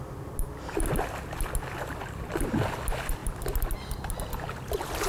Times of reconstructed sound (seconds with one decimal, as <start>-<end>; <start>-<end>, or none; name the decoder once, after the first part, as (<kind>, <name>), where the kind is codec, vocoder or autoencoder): none